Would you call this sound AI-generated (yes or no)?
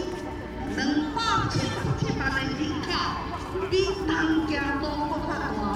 no